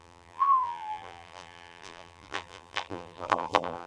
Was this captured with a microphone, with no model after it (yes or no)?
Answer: no